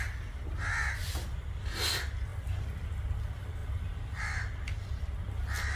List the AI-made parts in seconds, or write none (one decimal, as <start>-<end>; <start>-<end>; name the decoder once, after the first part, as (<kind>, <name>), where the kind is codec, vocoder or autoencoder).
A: none